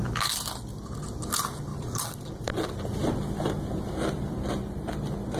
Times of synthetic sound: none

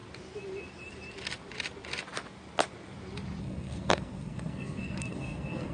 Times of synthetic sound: 3.4-5.7

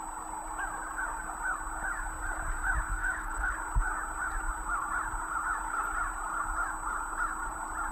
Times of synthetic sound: 3.0-3.5

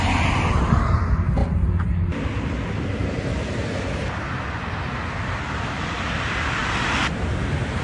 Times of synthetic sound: none

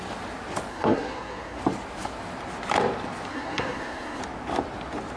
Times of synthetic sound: 0.7-1.6; 3.3-4.2

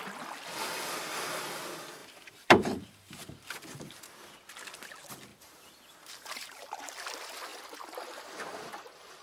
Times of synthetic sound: 2.0-3.5; 5.3-6.9

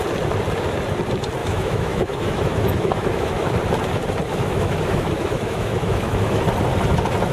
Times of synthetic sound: 1.4-3.5; 4.3-6.4